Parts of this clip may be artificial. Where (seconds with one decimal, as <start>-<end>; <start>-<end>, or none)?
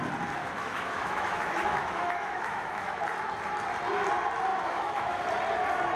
0.4-3.0; 4.5-5.2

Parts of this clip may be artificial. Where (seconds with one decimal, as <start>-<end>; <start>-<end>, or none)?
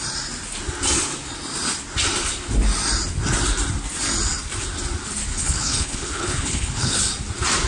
5.3-7.0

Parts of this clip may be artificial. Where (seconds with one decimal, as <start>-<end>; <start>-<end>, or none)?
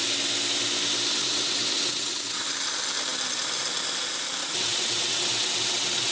1.2-2.5; 4.4-6.1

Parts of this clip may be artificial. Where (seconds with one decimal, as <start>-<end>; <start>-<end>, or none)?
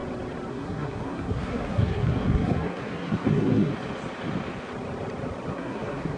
0.5-3.7; 5.5-6.2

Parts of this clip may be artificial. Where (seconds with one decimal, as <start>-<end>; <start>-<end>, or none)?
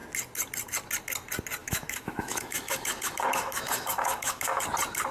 1.6-4.6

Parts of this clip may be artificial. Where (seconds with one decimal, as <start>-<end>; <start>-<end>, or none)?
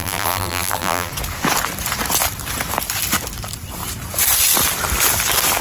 0.0-1.1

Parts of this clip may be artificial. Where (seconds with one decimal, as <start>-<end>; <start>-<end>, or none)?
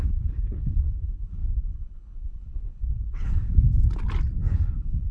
0.0-3.7; 4.5-5.1